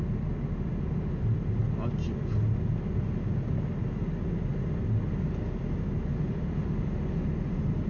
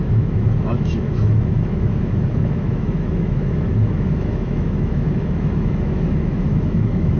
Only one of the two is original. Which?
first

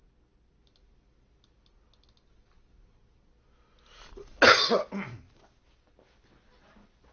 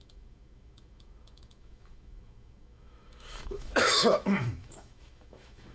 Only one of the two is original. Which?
first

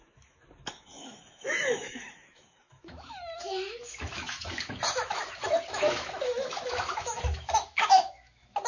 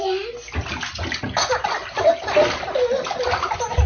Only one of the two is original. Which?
second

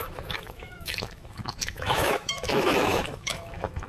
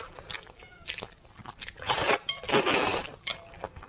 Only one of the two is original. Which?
second